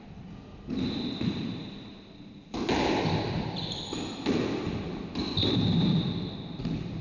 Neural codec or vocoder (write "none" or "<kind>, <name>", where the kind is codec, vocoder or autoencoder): none